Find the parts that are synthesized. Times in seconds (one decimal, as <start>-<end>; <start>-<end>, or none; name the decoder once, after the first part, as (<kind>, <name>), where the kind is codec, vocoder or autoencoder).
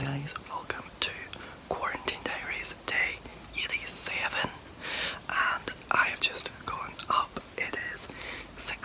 none